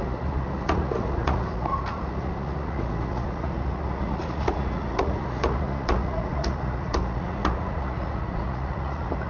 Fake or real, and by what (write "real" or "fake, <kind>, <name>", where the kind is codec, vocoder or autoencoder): fake, vocoder, Vocos